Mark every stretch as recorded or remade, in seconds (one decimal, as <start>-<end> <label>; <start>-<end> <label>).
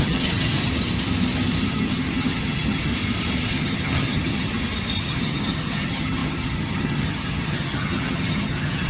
0.0-0.6 remade; 0.6-1.6 recorded; 1.6-2.9 remade; 2.9-3.5 recorded; 3.5-4.5 remade; 4.5-5.0 recorded; 5.0-8.9 remade